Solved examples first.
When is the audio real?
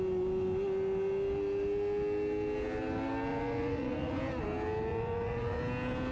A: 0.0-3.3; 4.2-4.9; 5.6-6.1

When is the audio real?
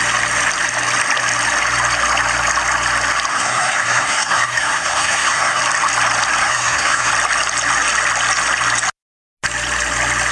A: 0.0-3.3; 5.6-6.4; 7.1-10.3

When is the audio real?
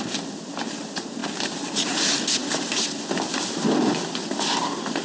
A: 0.0-5.0